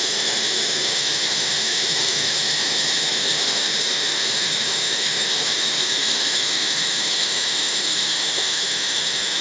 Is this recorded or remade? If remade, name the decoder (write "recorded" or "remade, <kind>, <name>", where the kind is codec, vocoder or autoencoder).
remade, autoencoder, DAC-VAE